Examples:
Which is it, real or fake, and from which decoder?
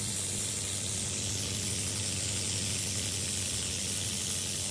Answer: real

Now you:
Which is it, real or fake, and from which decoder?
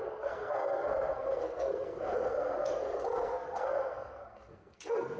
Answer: fake, codec, SNAC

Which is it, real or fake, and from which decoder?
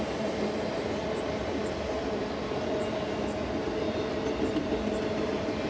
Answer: real